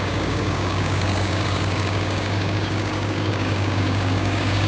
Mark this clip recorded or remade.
remade